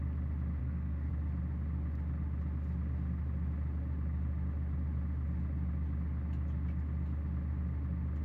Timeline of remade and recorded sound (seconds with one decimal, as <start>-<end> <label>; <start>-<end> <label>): 0.0-0.6 recorded; 0.6-1.1 remade; 1.1-8.2 recorded